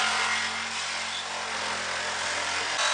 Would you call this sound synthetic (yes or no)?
no